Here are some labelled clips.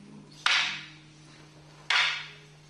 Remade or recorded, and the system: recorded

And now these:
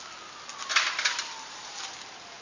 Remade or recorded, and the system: recorded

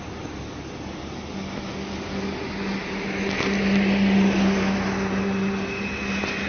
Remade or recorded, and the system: recorded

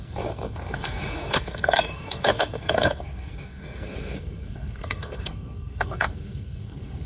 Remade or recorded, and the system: remade, codec, SNAC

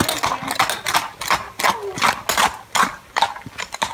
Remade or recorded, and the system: recorded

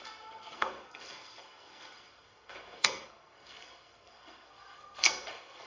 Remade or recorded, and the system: remade, codec, SNAC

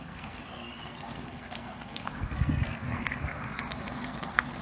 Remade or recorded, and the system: remade, codec, SNAC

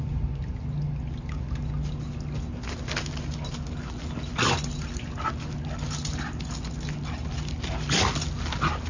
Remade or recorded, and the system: recorded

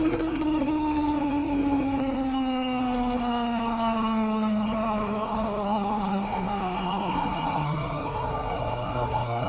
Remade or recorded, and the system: remade, codec, SNAC